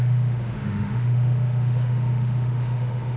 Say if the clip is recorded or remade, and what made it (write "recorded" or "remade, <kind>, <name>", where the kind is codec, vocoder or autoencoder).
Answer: remade, autoencoder, DAC-VAE